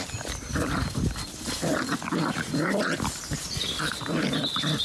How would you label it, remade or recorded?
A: remade